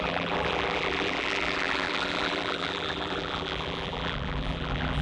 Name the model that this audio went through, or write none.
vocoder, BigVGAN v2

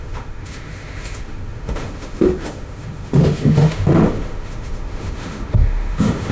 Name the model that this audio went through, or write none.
autoencoder, DAC-VAE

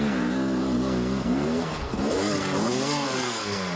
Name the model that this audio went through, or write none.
codec, SNAC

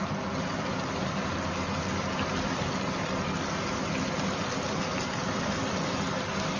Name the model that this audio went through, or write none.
none